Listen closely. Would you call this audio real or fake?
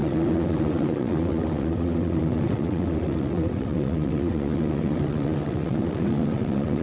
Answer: fake